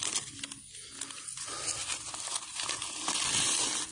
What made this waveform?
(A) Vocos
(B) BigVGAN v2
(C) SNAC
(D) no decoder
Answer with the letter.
D